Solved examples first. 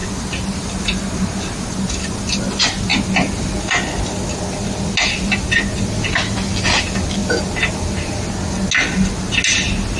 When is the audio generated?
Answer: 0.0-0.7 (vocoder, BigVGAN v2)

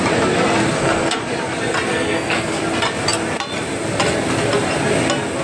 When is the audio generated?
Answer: 0.7-1.2 (codec, SNAC); 1.9-2.6